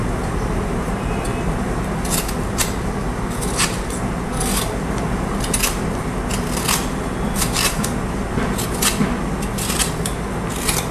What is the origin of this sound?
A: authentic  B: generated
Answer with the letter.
A